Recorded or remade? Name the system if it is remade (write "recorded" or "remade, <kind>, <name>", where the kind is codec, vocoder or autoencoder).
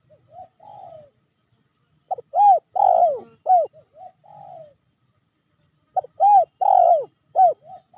recorded